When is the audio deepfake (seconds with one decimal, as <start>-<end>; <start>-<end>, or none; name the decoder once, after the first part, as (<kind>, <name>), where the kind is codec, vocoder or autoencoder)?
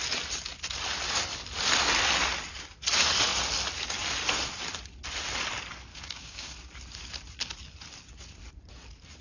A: 5.9-6.5 (codec, DAC)